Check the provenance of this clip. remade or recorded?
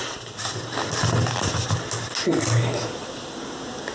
recorded